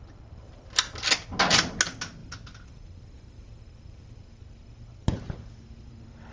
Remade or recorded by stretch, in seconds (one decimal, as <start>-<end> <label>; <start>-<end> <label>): 0.0-6.3 recorded